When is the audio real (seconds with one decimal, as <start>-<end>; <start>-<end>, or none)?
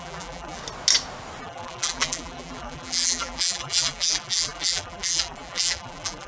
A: 0.6-1.4